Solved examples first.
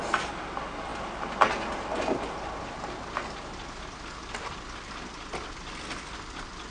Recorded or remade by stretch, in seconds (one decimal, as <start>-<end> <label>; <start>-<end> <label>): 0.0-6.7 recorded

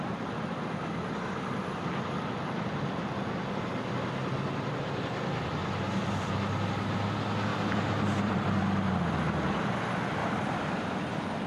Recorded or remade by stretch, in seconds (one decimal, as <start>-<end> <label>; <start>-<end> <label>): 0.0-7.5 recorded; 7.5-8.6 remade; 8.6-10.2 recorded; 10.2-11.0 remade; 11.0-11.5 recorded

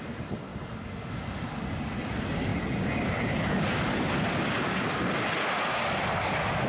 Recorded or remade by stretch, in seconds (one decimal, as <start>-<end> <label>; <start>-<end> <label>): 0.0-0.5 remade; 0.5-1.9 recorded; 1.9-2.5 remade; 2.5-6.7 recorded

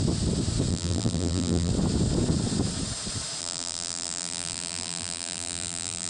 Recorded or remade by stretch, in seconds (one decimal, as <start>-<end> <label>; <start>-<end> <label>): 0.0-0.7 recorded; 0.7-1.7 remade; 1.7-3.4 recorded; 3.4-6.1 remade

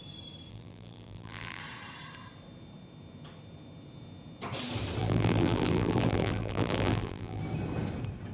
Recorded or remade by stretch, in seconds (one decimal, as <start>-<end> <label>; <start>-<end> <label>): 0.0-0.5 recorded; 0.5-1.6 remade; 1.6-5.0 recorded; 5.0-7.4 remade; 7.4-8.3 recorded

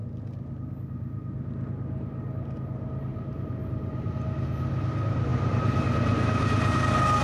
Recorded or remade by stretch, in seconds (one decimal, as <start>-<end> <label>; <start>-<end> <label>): 0.0-3.1 recorded; 3.1-4.1 remade; 4.1-5.3 recorded; 5.3-5.8 remade; 5.8-7.2 recorded

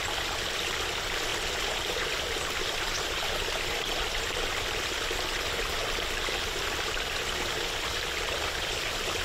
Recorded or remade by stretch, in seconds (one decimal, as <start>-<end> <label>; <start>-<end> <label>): 0.0-1.3 remade; 1.3-2.5 recorded; 2.5-5.7 remade; 5.7-6.6 recorded; 6.6-9.2 remade

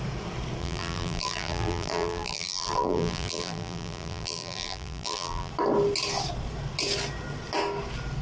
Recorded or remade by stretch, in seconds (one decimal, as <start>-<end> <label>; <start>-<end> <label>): 0.0-0.6 recorded; 0.6-5.5 remade; 5.5-8.2 recorded